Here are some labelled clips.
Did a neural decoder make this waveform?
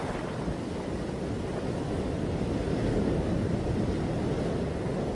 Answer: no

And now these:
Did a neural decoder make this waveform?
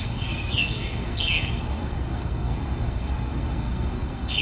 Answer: yes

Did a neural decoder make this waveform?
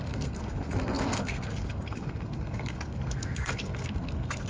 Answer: yes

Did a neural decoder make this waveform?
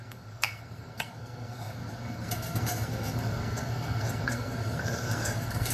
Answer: yes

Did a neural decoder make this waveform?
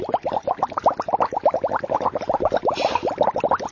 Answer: no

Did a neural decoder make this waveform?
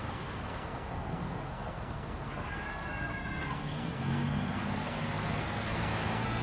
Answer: yes